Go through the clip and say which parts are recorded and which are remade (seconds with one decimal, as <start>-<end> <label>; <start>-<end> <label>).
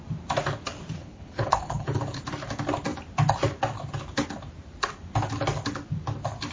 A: 0.0-1.0 recorded; 1.0-2.2 remade; 2.2-6.5 recorded